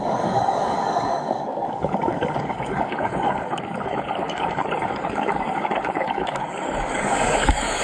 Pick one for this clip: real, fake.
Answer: fake